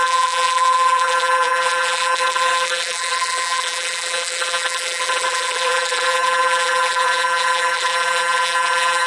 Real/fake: fake